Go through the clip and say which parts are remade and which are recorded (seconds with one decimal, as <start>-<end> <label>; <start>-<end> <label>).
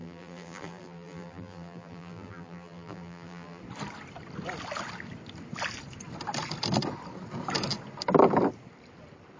0.0-3.6 remade; 3.6-9.4 recorded